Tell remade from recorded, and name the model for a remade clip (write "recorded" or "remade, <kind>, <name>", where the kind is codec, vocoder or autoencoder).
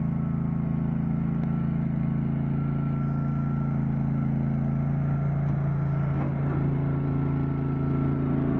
recorded